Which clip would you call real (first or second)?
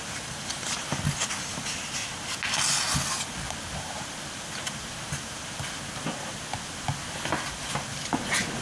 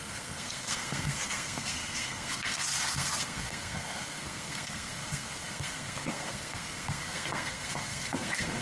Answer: first